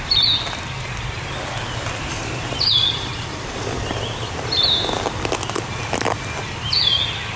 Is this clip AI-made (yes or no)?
no